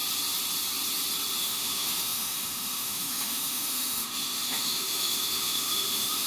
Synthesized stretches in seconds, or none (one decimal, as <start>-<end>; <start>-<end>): 1.4-6.3